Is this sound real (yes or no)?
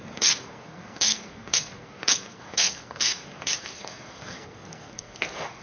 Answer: no